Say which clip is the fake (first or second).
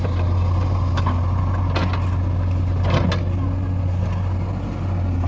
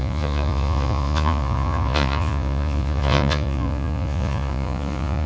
second